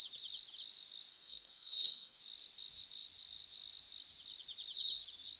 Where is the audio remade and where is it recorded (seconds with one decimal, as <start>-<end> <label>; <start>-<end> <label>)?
0.0-1.1 recorded; 1.1-2.2 remade; 2.2-5.4 recorded